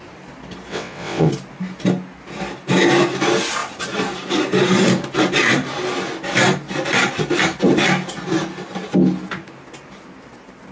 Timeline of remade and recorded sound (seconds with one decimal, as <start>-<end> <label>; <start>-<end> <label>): 0.0-0.7 recorded; 0.7-1.3 remade; 1.3-10.7 recorded